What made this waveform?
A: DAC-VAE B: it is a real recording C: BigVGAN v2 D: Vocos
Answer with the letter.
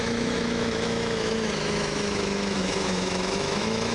A